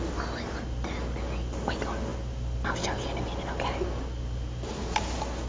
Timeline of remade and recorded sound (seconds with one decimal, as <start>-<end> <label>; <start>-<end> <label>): 0.0-5.5 recorded